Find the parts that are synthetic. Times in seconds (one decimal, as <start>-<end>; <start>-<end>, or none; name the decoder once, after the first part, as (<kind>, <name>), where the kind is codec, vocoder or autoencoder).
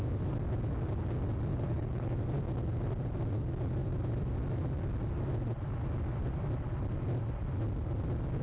1.5-2.1 (codec, HILCodec)